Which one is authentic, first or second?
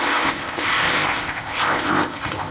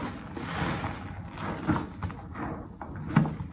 second